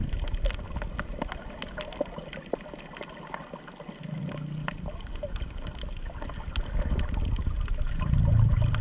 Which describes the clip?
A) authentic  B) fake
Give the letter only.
A